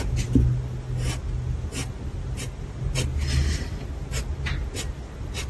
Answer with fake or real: real